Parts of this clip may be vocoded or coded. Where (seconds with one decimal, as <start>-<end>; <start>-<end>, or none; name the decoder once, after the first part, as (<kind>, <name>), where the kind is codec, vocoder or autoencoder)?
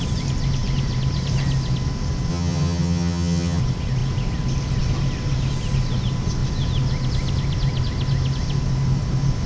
2.3-3.6 (vocoder, HiFi-GAN)